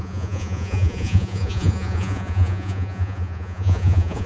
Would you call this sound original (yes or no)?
no